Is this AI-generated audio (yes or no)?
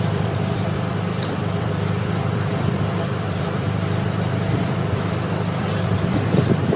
yes